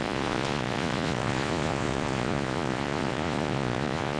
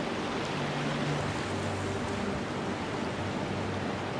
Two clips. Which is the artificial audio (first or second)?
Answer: first